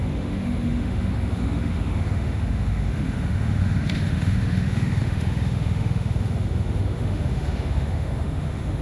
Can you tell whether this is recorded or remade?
remade